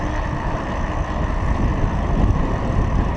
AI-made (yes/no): no